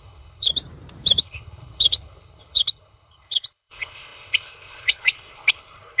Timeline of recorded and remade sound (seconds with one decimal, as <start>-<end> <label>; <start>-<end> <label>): 0.0-0.5 remade; 0.5-1.2 recorded; 1.2-6.0 remade